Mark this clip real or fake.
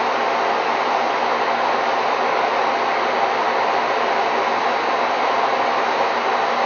real